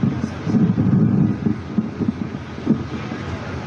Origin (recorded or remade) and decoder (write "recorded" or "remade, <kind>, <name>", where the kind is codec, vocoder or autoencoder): recorded